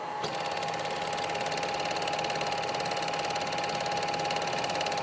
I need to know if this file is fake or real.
real